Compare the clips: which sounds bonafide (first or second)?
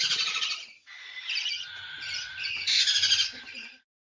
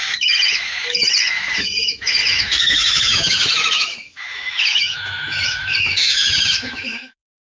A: first